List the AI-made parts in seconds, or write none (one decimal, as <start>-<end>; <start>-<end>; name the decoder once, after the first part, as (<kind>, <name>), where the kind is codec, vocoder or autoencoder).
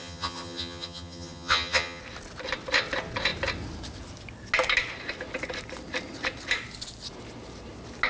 0.0-2.0 (vocoder, HiFi-GAN)